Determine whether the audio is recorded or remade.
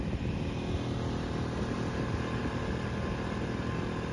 recorded